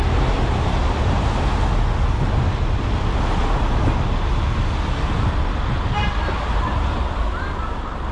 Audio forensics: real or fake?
real